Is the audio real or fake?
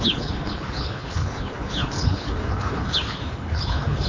fake